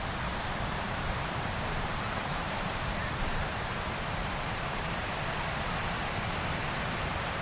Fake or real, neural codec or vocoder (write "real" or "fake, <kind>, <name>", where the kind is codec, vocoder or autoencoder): fake, vocoder, BigVGAN v2